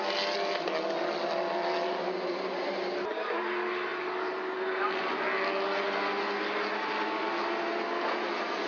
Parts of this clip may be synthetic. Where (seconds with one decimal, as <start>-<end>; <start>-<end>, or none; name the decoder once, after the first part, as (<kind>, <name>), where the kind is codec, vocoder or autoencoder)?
none